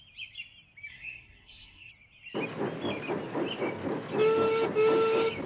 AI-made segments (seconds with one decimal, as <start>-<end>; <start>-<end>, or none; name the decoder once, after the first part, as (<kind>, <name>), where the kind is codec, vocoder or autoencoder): 0.9-1.9 (codec, SNAC)